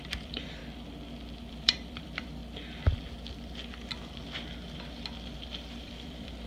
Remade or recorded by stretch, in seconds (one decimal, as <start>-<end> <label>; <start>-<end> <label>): 0.0-0.6 remade; 0.6-1.5 recorded; 1.5-2.4 remade; 2.4-5.8 recorded; 5.8-6.5 remade